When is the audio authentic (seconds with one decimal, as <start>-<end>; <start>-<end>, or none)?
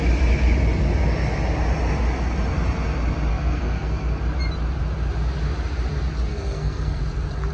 0.0-3.3; 4.2-6.3; 7.0-7.5